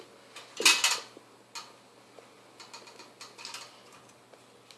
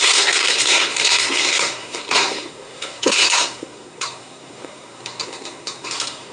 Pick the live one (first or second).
first